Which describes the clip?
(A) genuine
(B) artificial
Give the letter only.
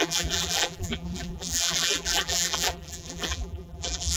B